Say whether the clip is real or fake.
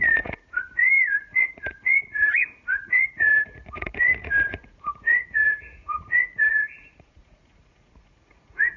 fake